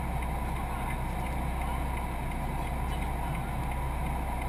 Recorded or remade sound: recorded